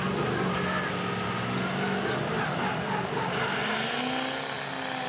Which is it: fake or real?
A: real